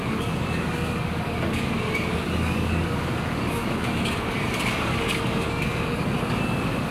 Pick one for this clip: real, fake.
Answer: fake